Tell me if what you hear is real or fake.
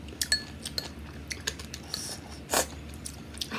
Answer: real